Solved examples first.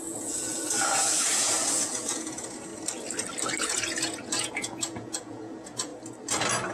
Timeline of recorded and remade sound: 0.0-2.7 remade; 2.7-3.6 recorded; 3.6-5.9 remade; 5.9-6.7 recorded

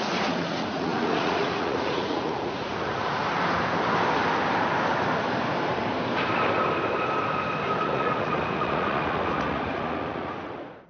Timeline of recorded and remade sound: 0.0-3.2 remade; 3.2-7.8 recorded; 7.8-10.9 remade

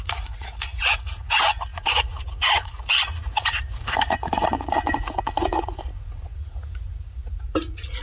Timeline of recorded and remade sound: 0.0-8.0 remade